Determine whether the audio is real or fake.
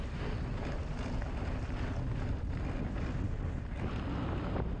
real